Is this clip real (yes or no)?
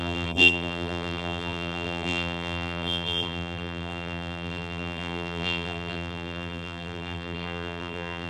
no